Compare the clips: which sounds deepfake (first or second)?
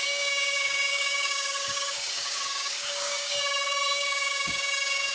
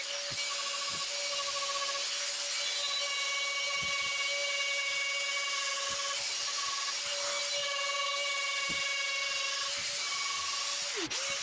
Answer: first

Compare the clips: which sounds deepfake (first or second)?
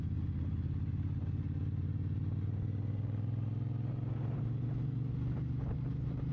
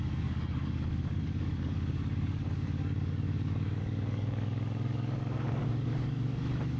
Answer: second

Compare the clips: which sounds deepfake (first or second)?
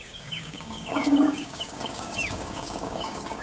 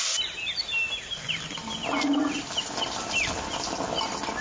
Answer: first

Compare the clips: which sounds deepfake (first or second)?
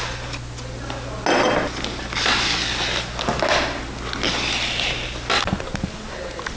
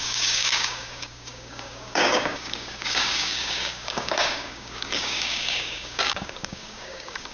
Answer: second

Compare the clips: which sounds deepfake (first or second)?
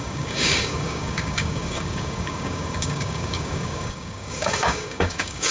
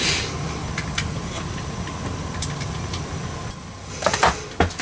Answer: first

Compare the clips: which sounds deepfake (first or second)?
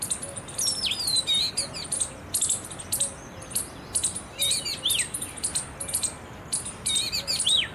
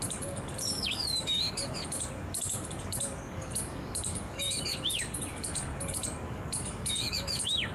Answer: second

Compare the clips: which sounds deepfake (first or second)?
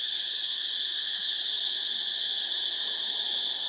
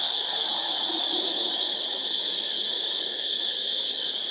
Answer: second